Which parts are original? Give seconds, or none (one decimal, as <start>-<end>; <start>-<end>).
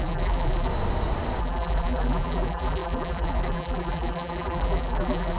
0.7-1.4